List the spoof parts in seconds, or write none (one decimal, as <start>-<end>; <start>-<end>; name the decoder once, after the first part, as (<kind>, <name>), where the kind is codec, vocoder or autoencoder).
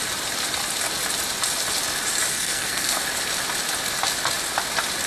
2.3-3.0 (codec, SNAC)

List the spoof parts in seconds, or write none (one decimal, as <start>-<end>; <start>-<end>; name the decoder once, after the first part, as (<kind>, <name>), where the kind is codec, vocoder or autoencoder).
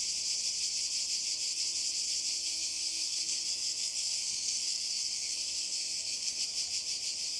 2.4-6.4 (codec, SNAC)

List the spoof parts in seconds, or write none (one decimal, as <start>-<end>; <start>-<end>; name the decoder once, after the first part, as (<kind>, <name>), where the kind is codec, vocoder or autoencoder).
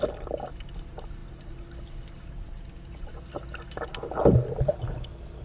none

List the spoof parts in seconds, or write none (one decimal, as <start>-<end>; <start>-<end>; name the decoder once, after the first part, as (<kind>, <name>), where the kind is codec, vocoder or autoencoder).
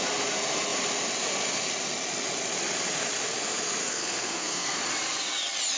3.8-4.8 (codec, SNAC)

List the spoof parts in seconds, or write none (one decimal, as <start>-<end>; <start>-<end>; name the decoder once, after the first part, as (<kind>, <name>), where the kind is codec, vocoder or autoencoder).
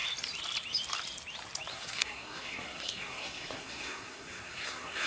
1.7-5.1 (codec, SNAC)